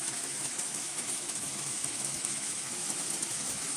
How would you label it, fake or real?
fake